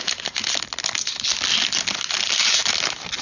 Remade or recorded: recorded